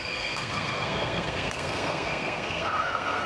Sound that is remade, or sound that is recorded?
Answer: remade